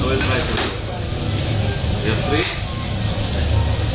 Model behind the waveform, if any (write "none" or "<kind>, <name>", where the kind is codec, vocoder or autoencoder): none